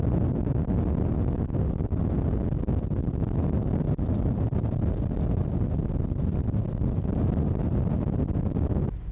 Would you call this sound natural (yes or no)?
yes